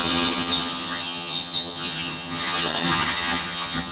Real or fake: fake